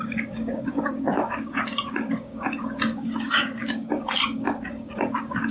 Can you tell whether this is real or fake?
fake